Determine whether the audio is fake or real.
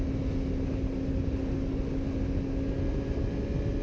real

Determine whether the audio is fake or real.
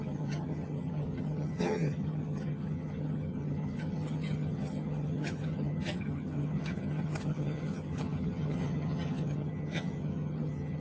fake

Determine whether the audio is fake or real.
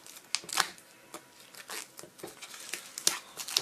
real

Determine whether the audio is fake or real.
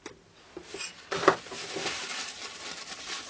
real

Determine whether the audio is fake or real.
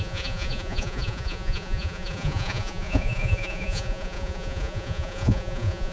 fake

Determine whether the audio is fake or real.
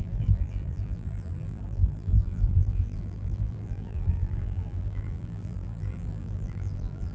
fake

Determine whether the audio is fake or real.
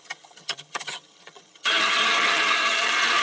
fake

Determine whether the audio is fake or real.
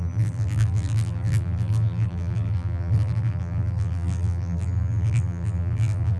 fake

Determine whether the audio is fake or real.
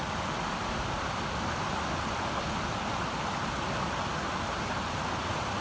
real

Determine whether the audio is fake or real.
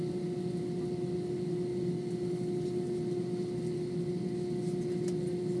real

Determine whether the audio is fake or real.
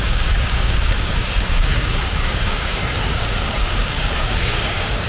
fake